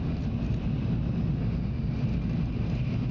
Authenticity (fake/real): real